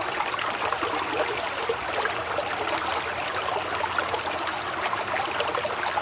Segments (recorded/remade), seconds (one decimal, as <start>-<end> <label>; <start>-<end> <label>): 0.0-6.0 recorded